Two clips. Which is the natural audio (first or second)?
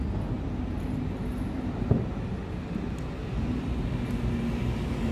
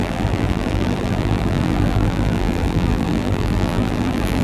first